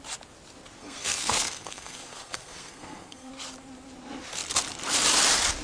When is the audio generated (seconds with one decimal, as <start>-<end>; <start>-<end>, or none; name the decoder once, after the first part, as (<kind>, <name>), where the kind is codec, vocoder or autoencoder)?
0.8-3.3 (codec, SNAC)